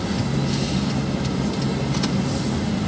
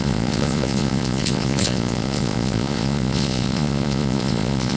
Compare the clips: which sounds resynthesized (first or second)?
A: second